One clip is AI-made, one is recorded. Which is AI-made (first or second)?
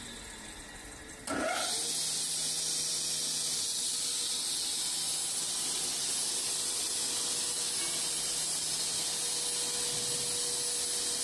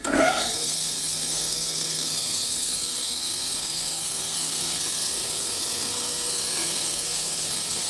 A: second